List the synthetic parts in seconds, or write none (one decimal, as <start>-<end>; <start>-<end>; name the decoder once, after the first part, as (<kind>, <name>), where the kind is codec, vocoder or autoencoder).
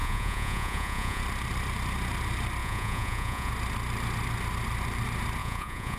0.0-1.2 (vocoder, Vocos); 2.6-3.5; 5.4-6.0